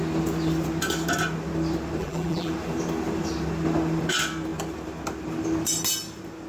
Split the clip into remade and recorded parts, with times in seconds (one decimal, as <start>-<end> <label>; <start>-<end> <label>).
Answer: 0.0-2.0 recorded; 2.0-2.5 remade; 2.5-6.5 recorded